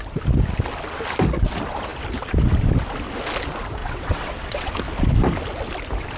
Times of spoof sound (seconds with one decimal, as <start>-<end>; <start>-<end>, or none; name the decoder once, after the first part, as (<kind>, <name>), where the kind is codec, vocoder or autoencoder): 3.8-4.7 (vocoder, WaveNeXt)

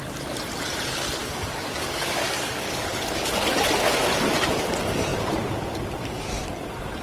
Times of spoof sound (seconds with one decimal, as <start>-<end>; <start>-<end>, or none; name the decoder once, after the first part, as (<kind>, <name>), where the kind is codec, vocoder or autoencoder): 1.2-3.3 (codec, DAC)

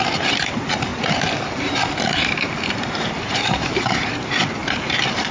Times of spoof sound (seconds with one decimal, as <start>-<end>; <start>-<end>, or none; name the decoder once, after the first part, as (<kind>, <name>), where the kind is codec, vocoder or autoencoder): 0.0-5.3 (vocoder, BigVGAN v2)

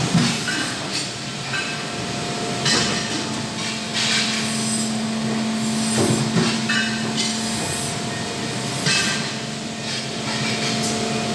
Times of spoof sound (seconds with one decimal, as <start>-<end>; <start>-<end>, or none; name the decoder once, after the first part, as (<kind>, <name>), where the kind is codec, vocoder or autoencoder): none

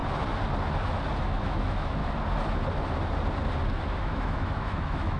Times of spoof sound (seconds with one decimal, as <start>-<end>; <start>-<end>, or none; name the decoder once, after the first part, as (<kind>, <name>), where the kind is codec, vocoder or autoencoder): 1.2-2.0 (autoencoder, DAC-VAE); 4.0-5.2

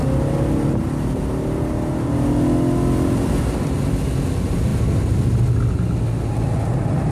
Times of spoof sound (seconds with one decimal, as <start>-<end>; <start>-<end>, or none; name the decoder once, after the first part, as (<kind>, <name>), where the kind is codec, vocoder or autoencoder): none